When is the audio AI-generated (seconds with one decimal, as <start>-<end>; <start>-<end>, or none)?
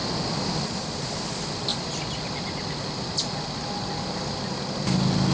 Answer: none